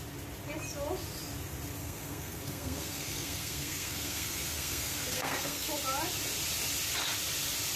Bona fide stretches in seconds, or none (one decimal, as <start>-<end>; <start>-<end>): 0.0-1.8; 5.8-7.8